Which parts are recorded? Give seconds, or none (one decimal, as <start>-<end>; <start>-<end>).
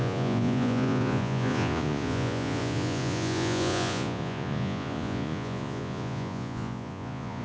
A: none